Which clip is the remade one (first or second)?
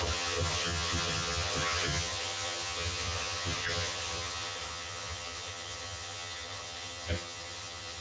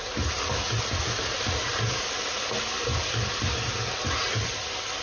first